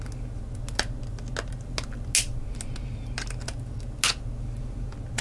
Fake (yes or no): no